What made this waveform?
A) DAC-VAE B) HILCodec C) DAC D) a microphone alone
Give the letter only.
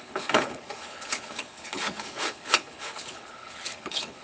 B